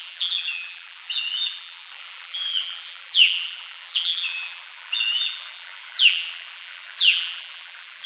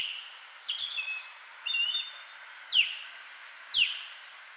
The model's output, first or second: first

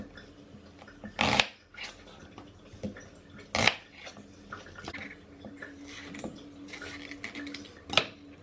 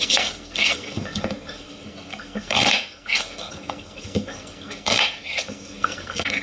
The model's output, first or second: second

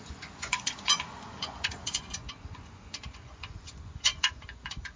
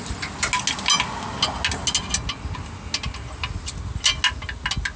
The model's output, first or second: first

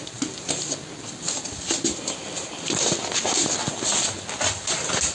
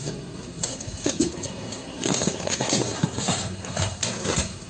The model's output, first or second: second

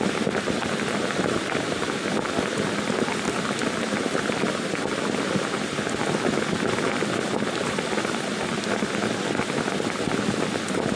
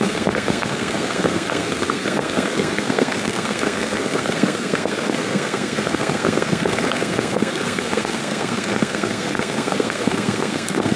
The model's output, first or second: second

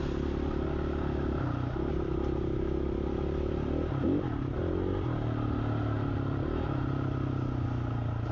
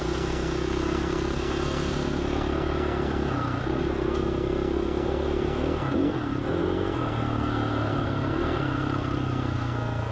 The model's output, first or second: second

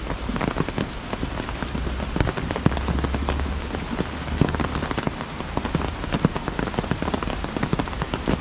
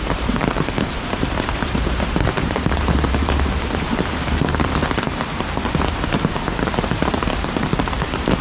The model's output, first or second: second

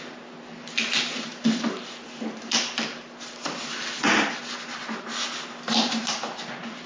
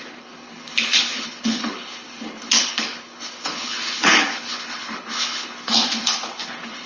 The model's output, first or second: second